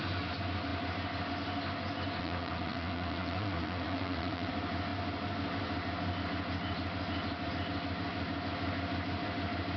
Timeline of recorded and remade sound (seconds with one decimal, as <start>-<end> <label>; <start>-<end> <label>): 0.0-2.2 recorded; 2.2-4.5 remade; 4.5-9.8 recorded